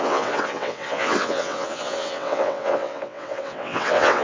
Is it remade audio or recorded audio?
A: remade